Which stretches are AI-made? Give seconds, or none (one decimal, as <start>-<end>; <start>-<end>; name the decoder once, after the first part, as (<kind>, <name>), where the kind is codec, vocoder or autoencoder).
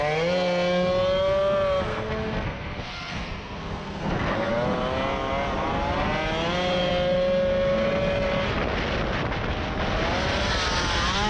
1.9-4.5 (codec, SNAC)